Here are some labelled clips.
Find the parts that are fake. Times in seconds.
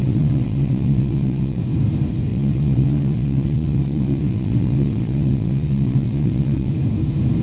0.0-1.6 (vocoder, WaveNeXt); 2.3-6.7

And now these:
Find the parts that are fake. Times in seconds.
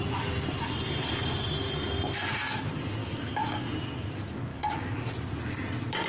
3.0-3.6 (codec, DAC); 4.5-5.1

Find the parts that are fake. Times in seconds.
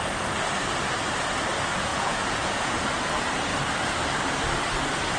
1.9-2.8 (vocoder, Vocos)